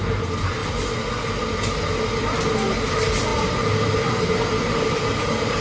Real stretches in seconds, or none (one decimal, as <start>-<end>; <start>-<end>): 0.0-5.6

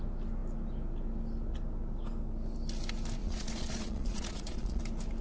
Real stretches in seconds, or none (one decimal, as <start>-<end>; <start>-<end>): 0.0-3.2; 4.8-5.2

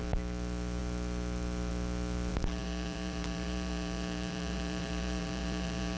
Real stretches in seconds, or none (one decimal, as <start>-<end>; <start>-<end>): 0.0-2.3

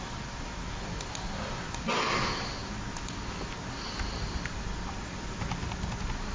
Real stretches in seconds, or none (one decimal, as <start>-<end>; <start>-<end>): 0.0-6.3